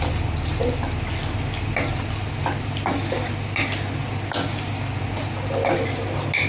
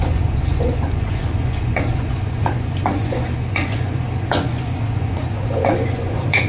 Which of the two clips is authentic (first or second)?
first